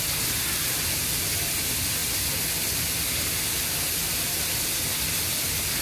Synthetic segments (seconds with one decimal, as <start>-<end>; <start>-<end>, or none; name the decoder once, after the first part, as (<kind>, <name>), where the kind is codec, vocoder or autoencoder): none